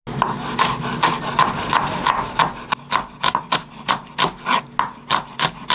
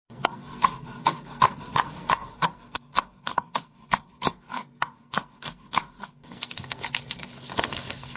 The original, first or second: first